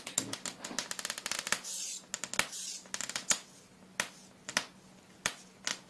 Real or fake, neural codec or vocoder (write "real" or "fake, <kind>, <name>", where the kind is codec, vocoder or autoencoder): real